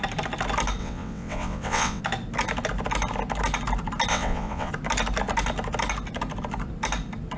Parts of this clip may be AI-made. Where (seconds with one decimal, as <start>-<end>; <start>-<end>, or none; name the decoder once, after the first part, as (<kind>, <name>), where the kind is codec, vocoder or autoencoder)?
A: 0.8-2.0 (vocoder, WaveNeXt); 4.1-4.7